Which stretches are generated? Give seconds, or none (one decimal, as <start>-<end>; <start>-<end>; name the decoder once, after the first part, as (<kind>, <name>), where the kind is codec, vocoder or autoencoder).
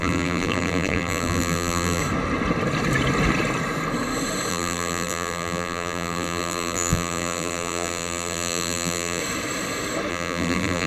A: 0.0-2.0 (vocoder, BigVGAN v2); 4.5-9.2; 10.1-10.9